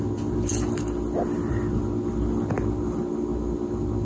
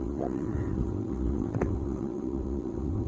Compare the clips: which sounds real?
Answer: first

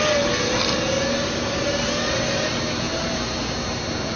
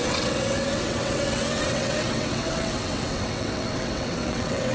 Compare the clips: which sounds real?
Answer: first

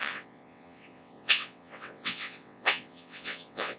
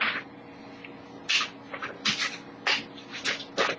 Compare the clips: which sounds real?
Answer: second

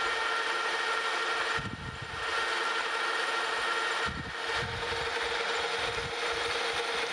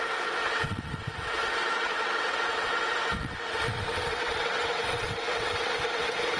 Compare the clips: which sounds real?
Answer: first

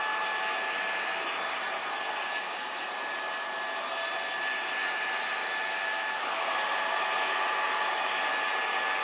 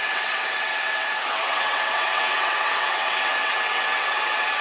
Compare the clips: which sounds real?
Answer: first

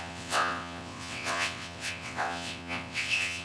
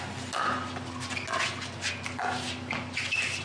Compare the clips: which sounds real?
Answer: second